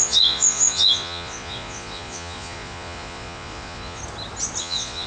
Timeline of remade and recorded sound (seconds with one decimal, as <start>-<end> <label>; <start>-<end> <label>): 0.0-4.0 remade; 4.0-4.6 recorded; 4.6-5.1 remade